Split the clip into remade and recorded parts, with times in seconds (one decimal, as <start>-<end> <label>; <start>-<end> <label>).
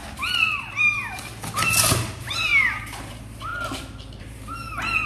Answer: 0.0-0.6 recorded; 0.6-1.3 remade; 1.3-1.9 recorded; 1.9-3.5 remade; 3.5-4.2 recorded; 4.2-5.1 remade